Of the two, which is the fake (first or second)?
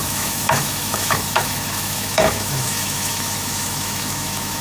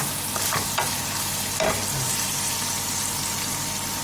first